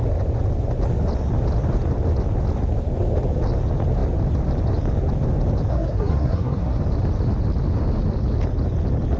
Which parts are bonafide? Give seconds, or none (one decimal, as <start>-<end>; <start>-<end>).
0.0-5.7; 6.8-9.2